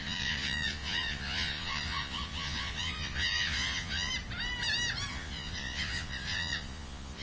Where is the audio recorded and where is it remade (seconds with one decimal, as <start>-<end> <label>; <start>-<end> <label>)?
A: 0.0-4.1 remade; 4.1-5.1 recorded; 5.1-7.2 remade